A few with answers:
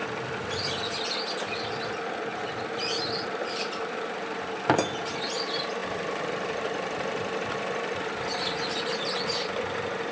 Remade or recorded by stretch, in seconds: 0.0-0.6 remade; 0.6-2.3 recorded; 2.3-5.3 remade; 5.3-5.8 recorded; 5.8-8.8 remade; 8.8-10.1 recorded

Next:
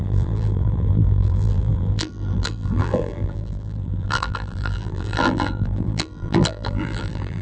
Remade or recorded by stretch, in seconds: 0.0-7.4 remade

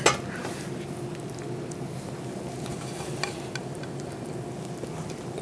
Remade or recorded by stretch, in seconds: 0.0-5.4 recorded